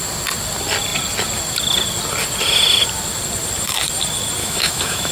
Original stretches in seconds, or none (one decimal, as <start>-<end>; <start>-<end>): 0.0-4.4